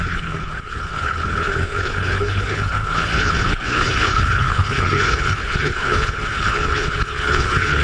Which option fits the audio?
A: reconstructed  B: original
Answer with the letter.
A